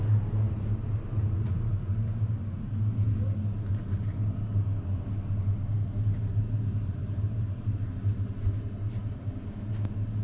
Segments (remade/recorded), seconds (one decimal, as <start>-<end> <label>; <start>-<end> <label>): 0.0-7.0 recorded; 7.0-9.3 remade; 9.3-10.2 recorded